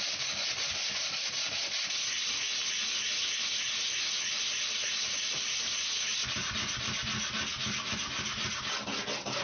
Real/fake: real